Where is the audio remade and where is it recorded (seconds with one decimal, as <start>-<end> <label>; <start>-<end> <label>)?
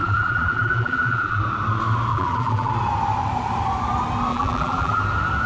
0.0-1.4 remade; 1.4-2.1 recorded; 2.1-2.7 remade; 2.7-4.3 recorded; 4.3-5.0 remade; 5.0-5.5 recorded